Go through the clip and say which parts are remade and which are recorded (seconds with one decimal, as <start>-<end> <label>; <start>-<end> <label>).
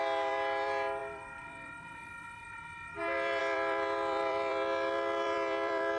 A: 0.0-6.0 remade